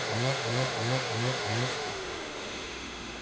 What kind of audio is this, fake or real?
fake